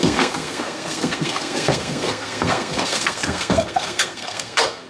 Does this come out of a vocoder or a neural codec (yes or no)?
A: yes